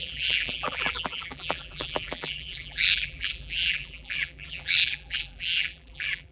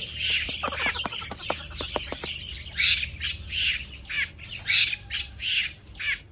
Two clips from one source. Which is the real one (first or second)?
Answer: second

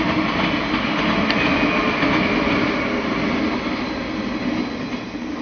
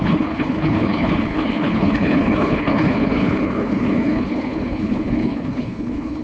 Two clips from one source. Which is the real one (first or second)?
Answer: first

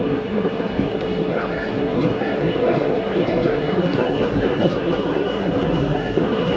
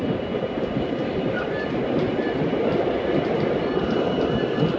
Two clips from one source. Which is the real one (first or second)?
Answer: second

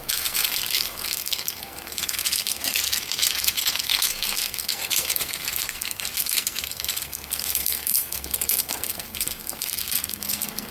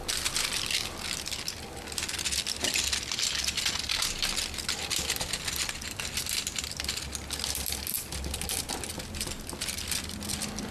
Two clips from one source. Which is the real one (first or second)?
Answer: second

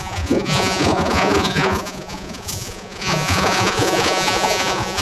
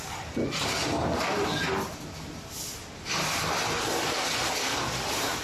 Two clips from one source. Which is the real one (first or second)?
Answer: second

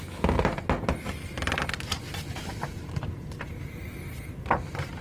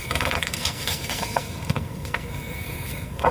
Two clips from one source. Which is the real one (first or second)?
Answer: first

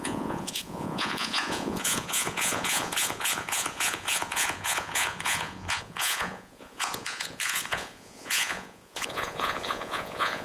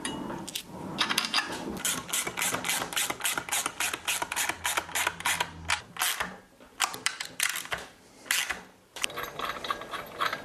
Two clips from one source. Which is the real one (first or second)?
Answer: second